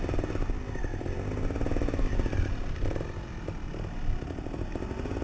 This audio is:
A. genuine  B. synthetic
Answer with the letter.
A